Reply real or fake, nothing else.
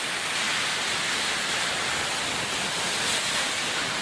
real